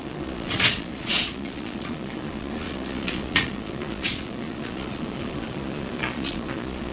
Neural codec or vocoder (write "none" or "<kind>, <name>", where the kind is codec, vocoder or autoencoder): vocoder, Vocos